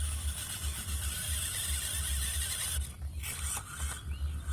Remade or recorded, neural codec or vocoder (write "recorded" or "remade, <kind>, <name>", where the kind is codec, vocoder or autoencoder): recorded